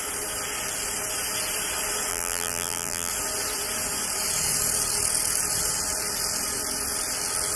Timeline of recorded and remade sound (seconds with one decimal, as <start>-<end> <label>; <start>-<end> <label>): 0.0-2.1 recorded; 2.1-3.1 remade; 3.1-7.6 recorded